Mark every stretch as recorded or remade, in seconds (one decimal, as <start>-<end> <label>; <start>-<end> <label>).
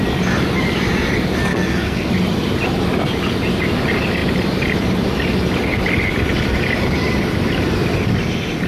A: 0.0-1.5 recorded; 1.5-2.1 remade; 2.1-8.7 recorded